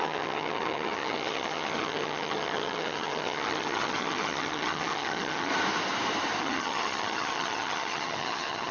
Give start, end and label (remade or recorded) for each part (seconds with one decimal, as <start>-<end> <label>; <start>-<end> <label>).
0.0-5.5 remade; 5.5-6.4 recorded; 6.4-8.7 remade